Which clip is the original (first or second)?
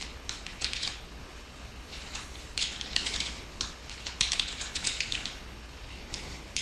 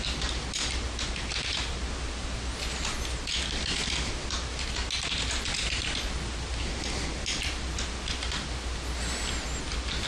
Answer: second